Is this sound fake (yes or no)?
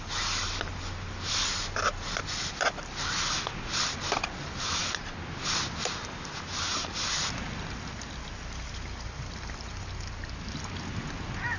no